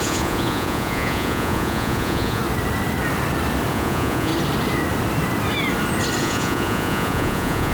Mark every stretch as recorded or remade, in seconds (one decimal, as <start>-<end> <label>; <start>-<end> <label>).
0.0-2.4 remade; 2.4-3.7 recorded; 3.7-4.3 remade; 4.3-6.2 recorded; 6.2-7.7 remade